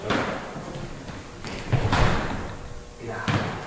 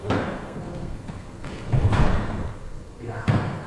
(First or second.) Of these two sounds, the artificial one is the second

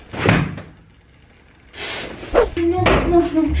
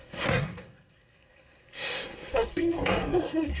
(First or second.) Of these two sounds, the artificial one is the second